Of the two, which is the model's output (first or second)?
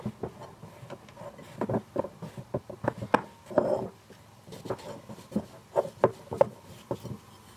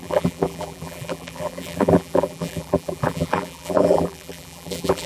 second